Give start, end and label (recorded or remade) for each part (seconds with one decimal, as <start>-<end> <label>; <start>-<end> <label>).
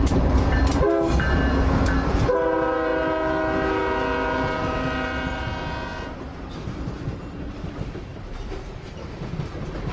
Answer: 0.0-9.9 recorded